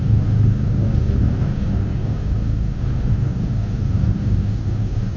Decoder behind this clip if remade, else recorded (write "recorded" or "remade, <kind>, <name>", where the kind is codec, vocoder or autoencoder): remade, codec, DAC